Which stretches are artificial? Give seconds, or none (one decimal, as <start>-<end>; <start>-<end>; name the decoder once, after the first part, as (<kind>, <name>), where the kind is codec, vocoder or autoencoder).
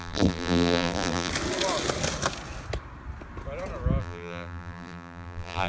0.0-1.3 (vocoder, BigVGAN v2); 4.0-5.7